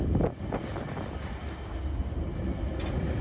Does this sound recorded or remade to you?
recorded